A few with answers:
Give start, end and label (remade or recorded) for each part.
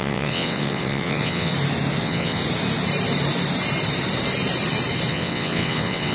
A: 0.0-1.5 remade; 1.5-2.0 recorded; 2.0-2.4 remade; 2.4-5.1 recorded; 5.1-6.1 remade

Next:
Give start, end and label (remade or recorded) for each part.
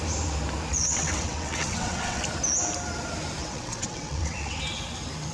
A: 0.0-0.7 recorded; 0.7-2.2 remade; 2.2-3.4 recorded; 3.4-4.6 remade; 4.6-5.3 recorded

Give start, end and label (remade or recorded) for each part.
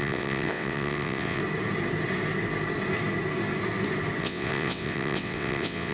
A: 0.0-1.4 remade; 1.4-4.2 recorded; 4.2-5.9 remade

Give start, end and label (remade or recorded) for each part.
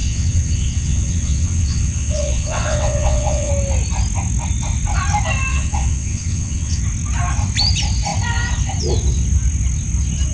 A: 0.0-3.5 remade; 3.5-5.5 recorded; 5.5-6.8 remade; 6.8-10.3 recorded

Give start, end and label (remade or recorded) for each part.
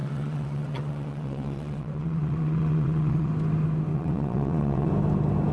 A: 0.0-3.3 remade; 3.3-3.9 recorded; 3.9-4.9 remade; 4.9-5.5 recorded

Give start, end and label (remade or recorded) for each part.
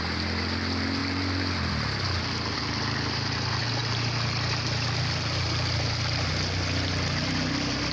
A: 0.0-7.9 recorded